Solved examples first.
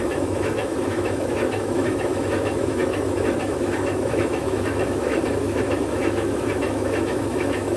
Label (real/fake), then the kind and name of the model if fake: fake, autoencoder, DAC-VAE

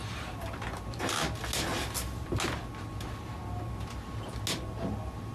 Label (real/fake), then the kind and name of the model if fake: real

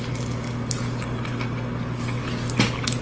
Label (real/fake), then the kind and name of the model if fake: real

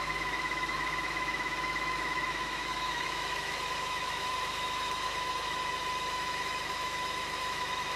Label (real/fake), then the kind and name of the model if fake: fake, autoencoder, DAC-VAE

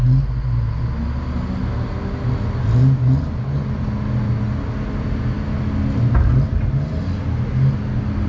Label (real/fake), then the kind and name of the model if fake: real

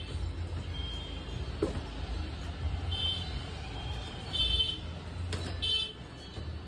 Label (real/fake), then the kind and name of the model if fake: real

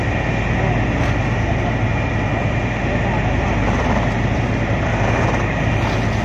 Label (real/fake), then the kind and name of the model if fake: real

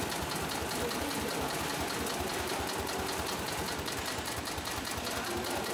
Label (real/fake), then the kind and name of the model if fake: real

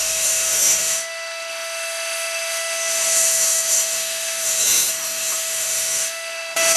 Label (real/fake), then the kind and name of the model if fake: fake, autoencoder, DAC-VAE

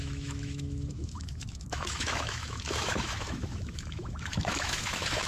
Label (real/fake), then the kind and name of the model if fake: fake, autoencoder, DAC-VAE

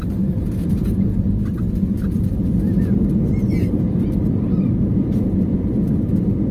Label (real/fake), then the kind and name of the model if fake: real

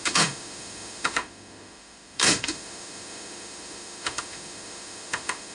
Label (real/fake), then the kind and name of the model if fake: fake, autoencoder, DAC-VAE